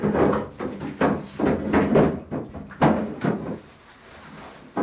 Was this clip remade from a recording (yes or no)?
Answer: no